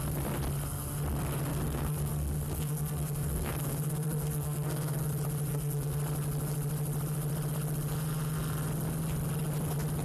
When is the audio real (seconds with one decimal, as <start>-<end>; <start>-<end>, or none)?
0.0-1.5; 5.1-5.5; 6.0-10.0